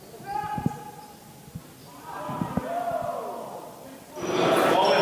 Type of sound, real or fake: real